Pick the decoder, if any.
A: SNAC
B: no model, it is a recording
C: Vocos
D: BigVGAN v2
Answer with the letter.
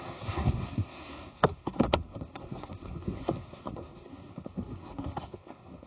A